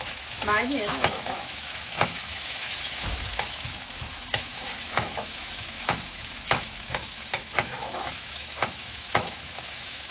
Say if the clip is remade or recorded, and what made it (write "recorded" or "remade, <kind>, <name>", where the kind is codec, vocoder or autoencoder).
remade, autoencoder, DAC-VAE